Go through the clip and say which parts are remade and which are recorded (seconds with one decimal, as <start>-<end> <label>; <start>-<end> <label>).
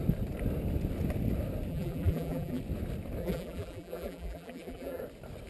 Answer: 0.0-1.7 recorded; 1.7-2.6 remade; 2.6-3.2 recorded; 3.2-5.0 remade; 5.0-5.5 recorded